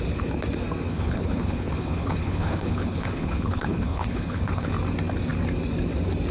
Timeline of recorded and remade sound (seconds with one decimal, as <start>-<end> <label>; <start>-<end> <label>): 0.0-0.9 recorded; 0.9-4.7 remade; 4.7-6.3 recorded